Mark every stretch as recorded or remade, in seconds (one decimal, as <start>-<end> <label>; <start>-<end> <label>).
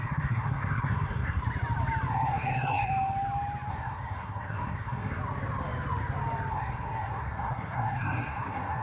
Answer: 0.0-1.4 remade; 1.4-2.1 recorded; 2.1-2.9 remade; 2.9-3.7 recorded; 3.7-5.2 remade; 5.2-6.5 recorded; 6.5-8.8 remade